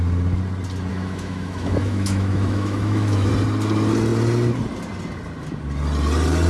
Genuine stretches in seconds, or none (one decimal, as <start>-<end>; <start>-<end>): 0.0-0.9; 3.3-6.5